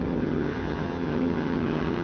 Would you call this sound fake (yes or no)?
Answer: yes